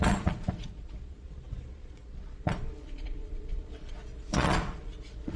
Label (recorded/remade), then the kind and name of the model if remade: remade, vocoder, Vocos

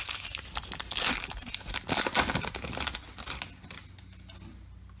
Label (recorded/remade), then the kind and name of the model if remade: recorded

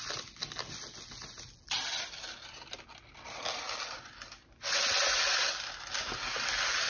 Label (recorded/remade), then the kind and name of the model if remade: recorded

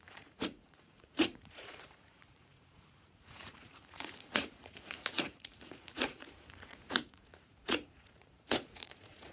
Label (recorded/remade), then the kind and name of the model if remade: remade, vocoder, Vocos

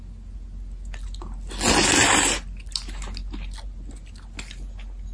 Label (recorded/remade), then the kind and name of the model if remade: recorded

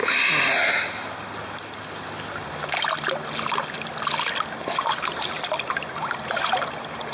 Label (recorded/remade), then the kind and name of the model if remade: recorded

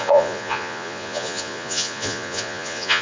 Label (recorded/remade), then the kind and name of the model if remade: remade, vocoder, Vocos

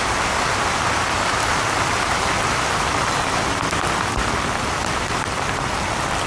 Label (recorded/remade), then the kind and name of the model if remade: recorded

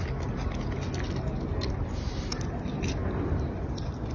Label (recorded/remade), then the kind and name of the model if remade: recorded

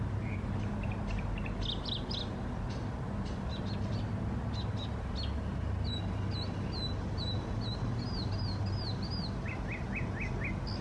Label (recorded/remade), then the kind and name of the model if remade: recorded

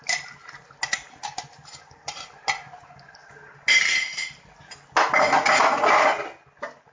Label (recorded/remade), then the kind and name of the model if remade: recorded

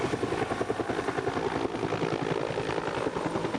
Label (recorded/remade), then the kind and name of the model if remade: recorded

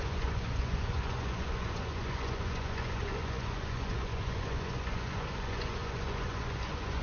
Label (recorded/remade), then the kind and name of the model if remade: remade, vocoder, Vocos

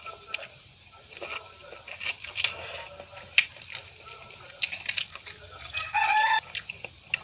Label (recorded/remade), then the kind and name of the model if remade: recorded